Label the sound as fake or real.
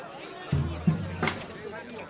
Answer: real